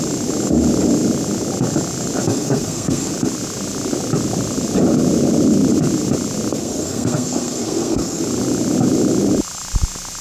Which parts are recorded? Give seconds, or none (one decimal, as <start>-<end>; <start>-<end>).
0.0-2.2; 3.1-6.5; 8.2-10.2